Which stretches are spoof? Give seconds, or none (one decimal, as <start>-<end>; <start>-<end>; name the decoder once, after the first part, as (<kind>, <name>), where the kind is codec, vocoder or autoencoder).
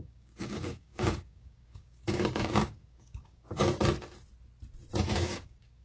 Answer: 0.0-3.6 (codec, DAC); 5.1-5.8